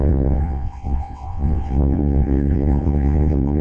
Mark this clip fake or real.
fake